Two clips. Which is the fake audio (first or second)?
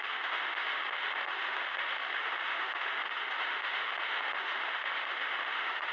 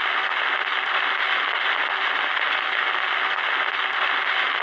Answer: first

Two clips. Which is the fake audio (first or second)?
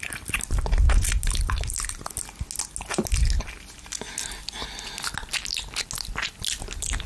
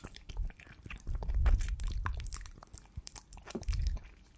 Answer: second